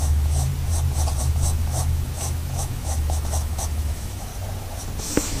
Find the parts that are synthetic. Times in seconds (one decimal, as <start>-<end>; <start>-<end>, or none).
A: 0.0-0.5; 1.2-4.3; 5.0-5.4